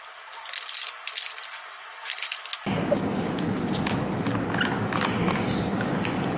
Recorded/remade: recorded